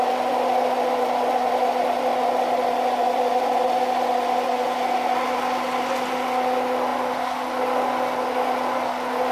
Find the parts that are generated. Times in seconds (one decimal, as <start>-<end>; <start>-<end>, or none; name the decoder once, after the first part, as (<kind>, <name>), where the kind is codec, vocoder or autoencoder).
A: none